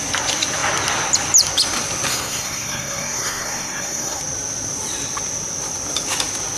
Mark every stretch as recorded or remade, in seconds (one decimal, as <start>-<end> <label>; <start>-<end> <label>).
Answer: 0.0-2.1 recorded; 2.1-4.2 remade; 4.2-6.6 recorded